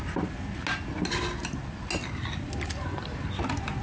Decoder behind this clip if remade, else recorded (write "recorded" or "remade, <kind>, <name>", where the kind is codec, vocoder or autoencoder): recorded